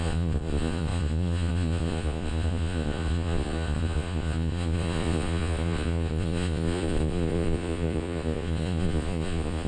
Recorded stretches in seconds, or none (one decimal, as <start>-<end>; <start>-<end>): none